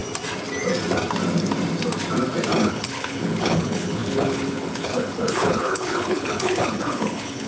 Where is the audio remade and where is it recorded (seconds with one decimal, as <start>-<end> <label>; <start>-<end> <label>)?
0.0-2.6 recorded; 2.6-7.5 remade